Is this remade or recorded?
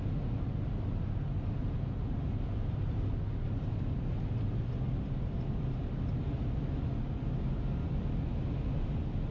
recorded